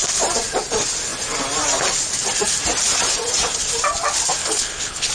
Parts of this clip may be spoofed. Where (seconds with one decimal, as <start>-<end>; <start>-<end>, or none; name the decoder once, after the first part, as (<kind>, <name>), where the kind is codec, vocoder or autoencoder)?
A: 4.4-5.1 (codec, HILCodec)